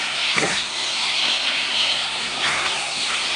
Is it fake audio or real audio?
fake